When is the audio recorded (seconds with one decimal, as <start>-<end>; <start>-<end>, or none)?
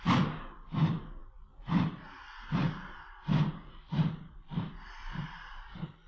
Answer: none